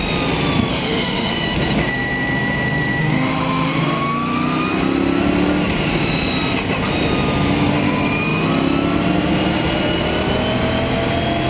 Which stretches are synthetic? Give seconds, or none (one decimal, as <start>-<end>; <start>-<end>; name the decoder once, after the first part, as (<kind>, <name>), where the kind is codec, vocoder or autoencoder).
0.7-1.3 (autoencoder, DAC-VAE); 3.0-3.8